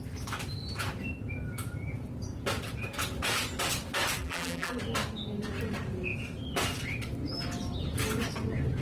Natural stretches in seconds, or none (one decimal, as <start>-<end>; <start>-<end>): 0.0-4.2; 4.8-8.8